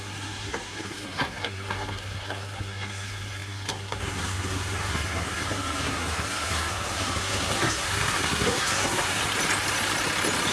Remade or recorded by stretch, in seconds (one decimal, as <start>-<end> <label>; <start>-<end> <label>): 0.0-9.2 remade; 9.2-10.5 recorded